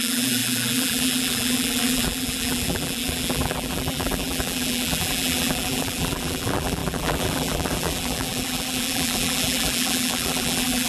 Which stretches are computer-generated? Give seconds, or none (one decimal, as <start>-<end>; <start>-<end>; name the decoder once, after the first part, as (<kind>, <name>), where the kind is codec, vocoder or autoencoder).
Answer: 0.0-10.9 (vocoder, BigVGAN v2)